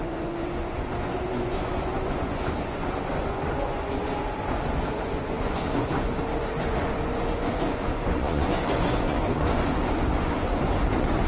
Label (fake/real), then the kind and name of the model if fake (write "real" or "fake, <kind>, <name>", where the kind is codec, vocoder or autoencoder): fake, vocoder, Vocos